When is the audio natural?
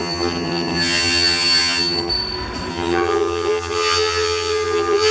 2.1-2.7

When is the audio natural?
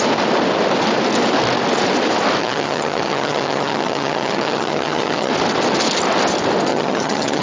0.0-2.4; 5.3-6.7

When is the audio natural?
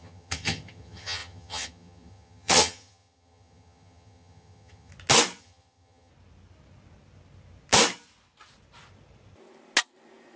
4.9-5.4; 6.1-10.4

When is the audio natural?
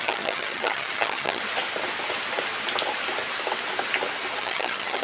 1.4-4.4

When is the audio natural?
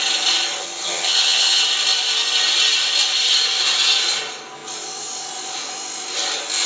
0.0-0.6; 1.6-6.7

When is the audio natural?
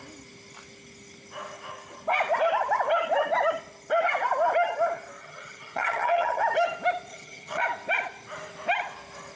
0.0-5.2; 6.4-7.1; 7.6-9.4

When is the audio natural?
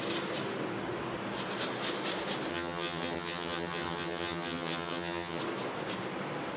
0.0-2.5; 5.4-6.6